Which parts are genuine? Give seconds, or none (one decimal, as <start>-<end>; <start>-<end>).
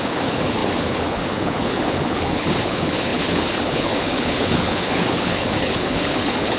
none